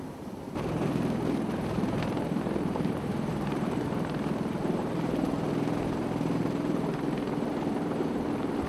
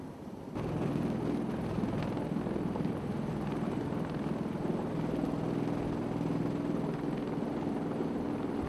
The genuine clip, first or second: second